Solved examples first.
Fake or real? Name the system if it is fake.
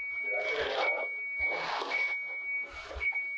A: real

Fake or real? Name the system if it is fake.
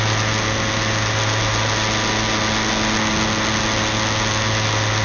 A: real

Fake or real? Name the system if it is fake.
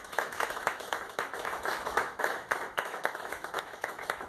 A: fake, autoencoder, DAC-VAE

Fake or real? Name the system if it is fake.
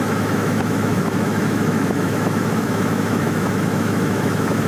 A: fake, autoencoder, DAC-VAE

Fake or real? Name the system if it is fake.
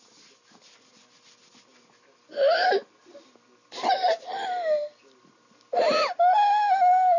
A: real